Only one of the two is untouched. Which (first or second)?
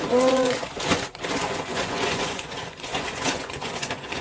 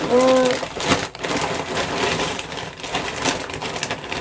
second